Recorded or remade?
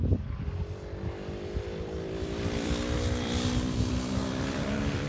remade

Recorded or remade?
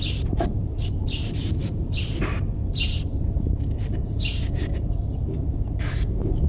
remade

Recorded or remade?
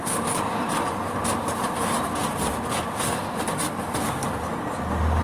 remade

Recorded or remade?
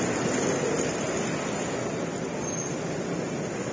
recorded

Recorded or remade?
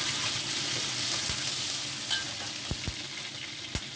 recorded